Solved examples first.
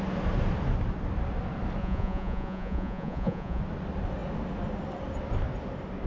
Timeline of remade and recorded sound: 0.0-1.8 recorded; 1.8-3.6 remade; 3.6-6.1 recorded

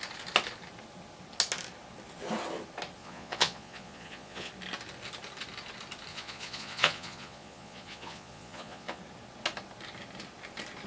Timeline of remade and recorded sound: 0.0-3.0 recorded; 3.0-4.5 remade; 4.5-6.1 recorded; 6.1-9.0 remade; 9.0-10.9 recorded